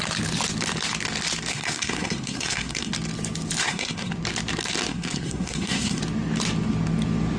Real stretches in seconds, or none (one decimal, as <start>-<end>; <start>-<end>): 0.0-1.5; 2.9-3.6; 4.1-4.9; 6.0-7.4